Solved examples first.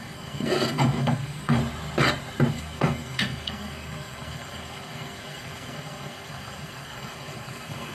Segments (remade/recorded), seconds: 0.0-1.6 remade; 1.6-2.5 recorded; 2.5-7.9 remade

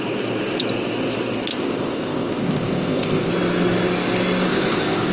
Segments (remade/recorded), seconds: 0.0-1.5 recorded; 1.5-3.3 remade; 3.3-4.5 recorded; 4.5-5.1 remade

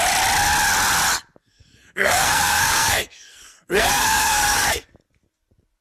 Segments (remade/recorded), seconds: 0.0-1.4 recorded; 1.4-4.9 remade; 4.9-5.8 recorded

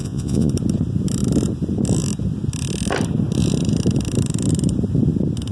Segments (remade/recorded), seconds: 0.0-0.5 remade; 0.5-5.5 recorded

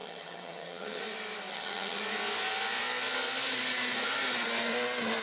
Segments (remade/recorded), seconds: 0.0-1.0 remade; 1.0-1.5 recorded; 1.5-2.0 remade; 2.0-5.2 recorded

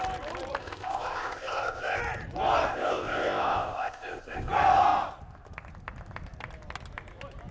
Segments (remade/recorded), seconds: 0.0-0.6 recorded; 0.6-2.0 remade; 2.0-2.7 recorded; 2.7-4.5 remade; 4.5-7.5 recorded

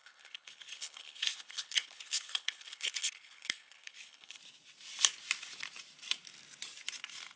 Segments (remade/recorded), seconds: 0.0-4.4 remade; 4.4-7.4 recorded

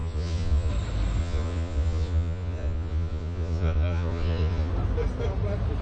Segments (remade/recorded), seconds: 0.0-0.7 remade; 0.7-1.2 recorded; 1.2-4.7 remade; 4.7-5.8 recorded